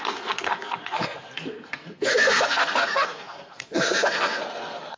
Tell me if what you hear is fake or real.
fake